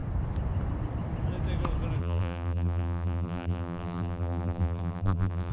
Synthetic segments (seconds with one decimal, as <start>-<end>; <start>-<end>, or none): 2.0-5.5